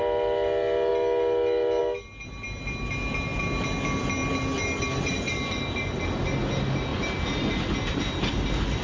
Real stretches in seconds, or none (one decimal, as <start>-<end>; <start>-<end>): 0.0-8.8